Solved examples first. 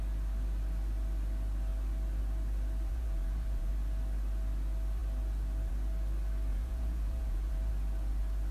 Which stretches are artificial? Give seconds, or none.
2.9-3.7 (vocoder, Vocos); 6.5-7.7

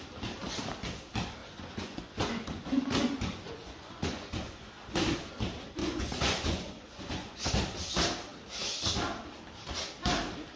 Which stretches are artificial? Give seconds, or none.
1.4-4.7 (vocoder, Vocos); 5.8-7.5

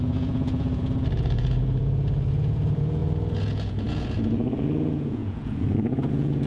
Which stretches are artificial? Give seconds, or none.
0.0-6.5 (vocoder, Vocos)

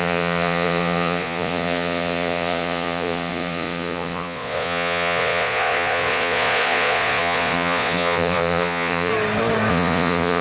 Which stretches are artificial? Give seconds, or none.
0.0-9.1 (vocoder, Vocos); 9.7-10.4

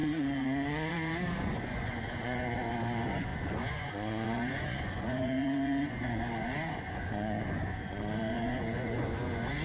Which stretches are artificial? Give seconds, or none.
0.0-9.6 (vocoder, Vocos)